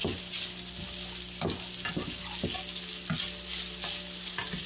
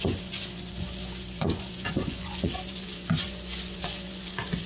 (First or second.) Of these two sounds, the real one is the first